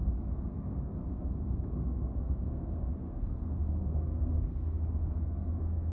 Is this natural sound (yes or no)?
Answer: no